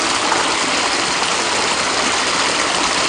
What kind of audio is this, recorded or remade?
recorded